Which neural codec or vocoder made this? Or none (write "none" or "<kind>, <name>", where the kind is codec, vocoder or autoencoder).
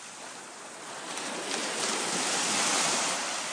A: none